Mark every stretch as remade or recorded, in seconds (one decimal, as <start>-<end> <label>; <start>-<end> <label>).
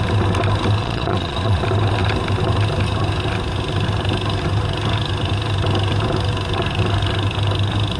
0.0-0.8 recorded; 0.8-1.6 remade; 1.6-8.0 recorded